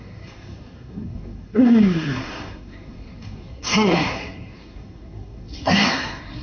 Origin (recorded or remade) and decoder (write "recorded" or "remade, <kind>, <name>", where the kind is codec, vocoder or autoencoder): remade, codec, SNAC